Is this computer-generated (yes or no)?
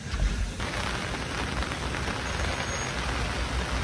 no